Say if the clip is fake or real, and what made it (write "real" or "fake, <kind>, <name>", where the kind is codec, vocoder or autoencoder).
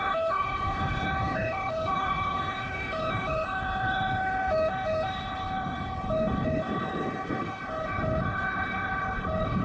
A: fake, codec, HILCodec